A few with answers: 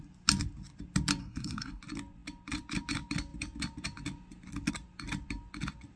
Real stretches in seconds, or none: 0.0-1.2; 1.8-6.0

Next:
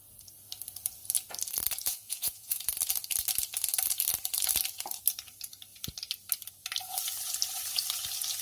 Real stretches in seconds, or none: 0.0-1.9; 2.6-8.4

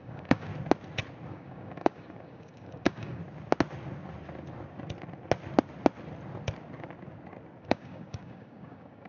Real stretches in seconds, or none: 0.5-1.3; 3.2-7.6

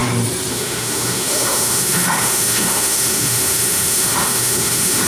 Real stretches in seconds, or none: 0.0-0.5